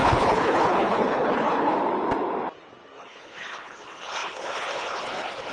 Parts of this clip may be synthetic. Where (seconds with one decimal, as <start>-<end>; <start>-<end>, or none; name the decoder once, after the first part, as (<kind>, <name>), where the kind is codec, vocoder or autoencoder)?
0.0-1.7 (codec, HILCodec); 3.0-5.5